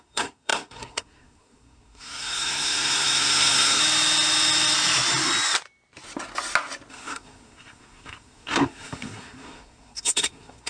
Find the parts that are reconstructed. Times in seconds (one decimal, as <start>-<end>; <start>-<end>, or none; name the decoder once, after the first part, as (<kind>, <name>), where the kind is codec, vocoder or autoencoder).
0.0-3.8 (codec, SNAC); 6.9-10.7